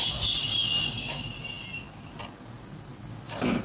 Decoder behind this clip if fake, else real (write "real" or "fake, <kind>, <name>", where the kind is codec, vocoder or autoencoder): real